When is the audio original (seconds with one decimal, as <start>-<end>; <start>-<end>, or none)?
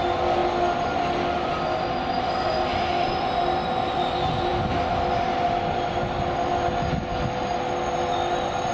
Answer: 0.0-8.7